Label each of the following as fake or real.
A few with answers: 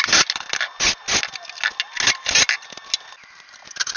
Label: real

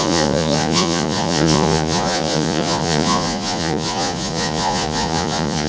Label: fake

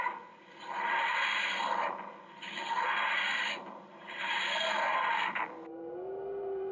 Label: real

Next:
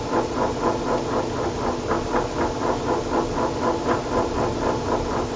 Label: real